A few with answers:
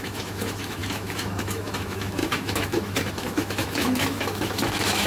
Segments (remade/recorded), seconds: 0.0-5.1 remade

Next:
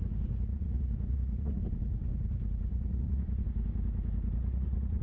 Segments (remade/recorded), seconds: 0.0-0.5 recorded; 0.5-1.6 remade; 1.6-2.7 recorded; 2.7-3.4 remade; 3.4-4.4 recorded; 4.4-5.0 remade

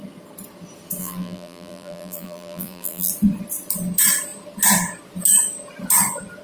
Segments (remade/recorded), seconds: 0.0-1.0 recorded; 1.0-3.1 remade; 3.1-6.4 recorded

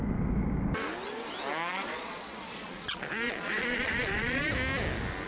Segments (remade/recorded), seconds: 0.0-1.7 recorded; 1.7-4.5 remade; 4.5-5.3 recorded

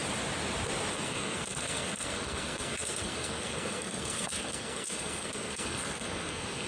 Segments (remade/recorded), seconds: 0.0-0.9 recorded; 0.9-6.7 remade

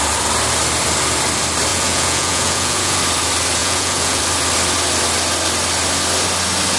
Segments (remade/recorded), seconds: 0.0-1.7 recorded; 1.7-3.0 remade; 3.0-3.6 recorded; 3.6-4.2 remade; 4.2-6.8 recorded